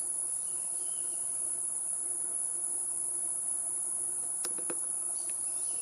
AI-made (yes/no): no